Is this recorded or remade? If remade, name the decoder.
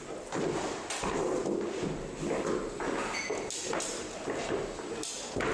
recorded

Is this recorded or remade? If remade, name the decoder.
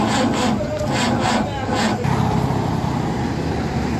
recorded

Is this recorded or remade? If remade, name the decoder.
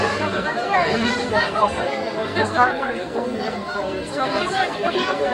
remade, codec, SNAC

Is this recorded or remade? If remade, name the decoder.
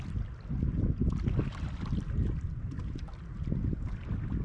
recorded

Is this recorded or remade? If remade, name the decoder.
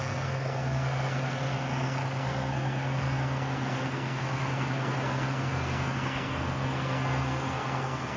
remade, codec, SNAC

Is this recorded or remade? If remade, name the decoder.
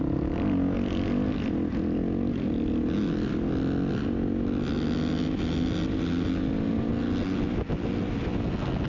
recorded